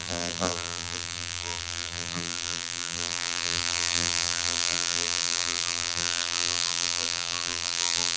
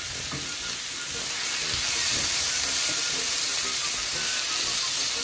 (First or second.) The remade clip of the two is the first